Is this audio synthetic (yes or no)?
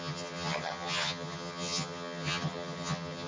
yes